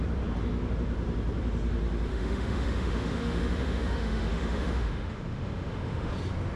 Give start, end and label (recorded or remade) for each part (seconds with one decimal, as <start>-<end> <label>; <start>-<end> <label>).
0.0-2.1 recorded; 2.1-6.1 remade; 6.1-6.6 recorded